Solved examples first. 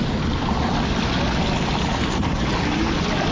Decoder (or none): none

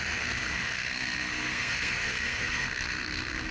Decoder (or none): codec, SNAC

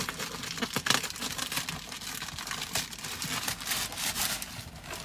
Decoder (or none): none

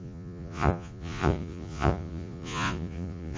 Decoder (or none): vocoder, Vocos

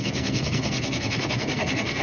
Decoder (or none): codec, SNAC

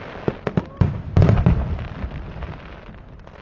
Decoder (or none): none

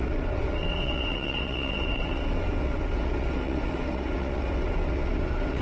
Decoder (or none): vocoder, WaveNeXt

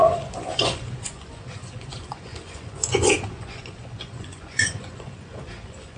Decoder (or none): vocoder, Vocos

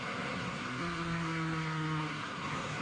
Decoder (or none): codec, SNAC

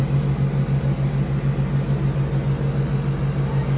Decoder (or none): none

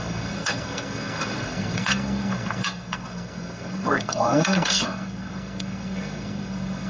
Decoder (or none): codec, SNAC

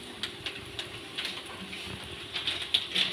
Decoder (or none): none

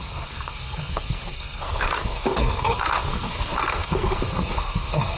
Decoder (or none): codec, SNAC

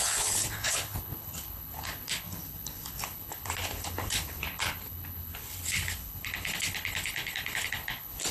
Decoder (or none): codec, HILCodec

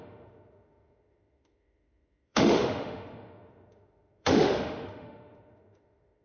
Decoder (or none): autoencoder, DAC-VAE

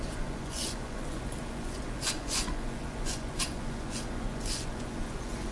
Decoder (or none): vocoder, Vocos